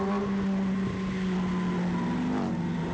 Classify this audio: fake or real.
real